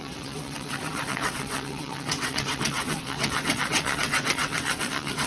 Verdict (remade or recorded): remade